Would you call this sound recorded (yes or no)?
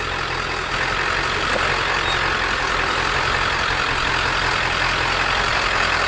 yes